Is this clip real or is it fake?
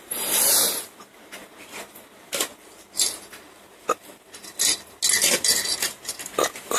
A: real